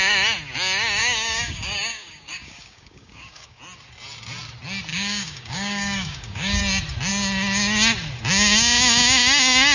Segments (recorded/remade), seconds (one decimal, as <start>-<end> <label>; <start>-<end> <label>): 0.0-1.0 recorded; 1.0-3.6 remade; 3.6-4.9 recorded; 4.9-6.6 remade; 6.6-9.7 recorded